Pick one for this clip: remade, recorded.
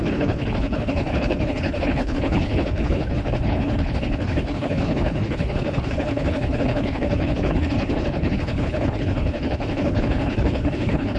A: remade